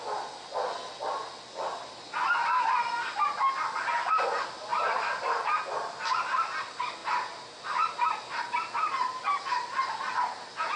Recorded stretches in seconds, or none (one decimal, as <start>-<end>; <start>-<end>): 0.0-10.8